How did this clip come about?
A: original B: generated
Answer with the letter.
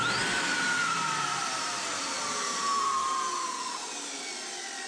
A